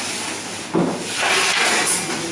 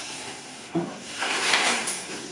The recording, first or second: first